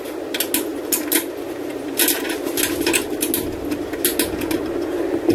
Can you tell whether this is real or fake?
real